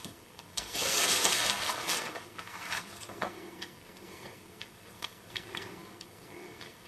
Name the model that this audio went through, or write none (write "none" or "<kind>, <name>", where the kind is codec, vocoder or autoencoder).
codec, SNAC